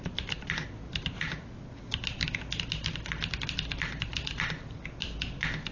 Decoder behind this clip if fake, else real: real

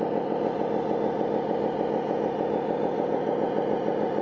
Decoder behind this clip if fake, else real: real